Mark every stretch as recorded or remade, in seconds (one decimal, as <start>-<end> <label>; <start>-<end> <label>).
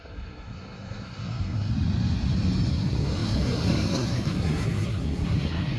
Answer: 0.0-1.7 remade; 1.7-2.7 recorded; 2.7-5.8 remade